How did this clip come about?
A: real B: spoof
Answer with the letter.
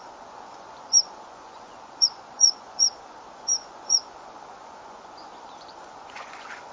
B